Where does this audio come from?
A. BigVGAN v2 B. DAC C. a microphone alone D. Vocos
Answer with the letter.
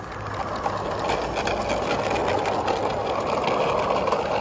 C